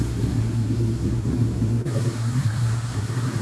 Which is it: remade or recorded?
remade